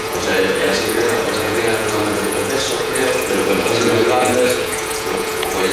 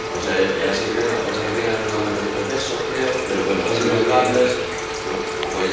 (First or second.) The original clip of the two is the second